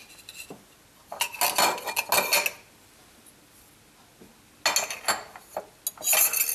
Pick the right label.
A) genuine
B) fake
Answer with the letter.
A